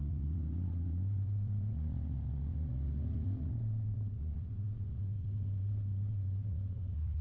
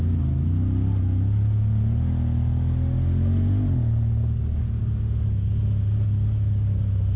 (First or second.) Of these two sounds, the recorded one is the second